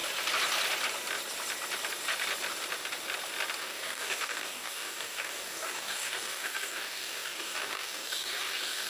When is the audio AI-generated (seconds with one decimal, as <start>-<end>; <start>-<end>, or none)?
3.6-8.9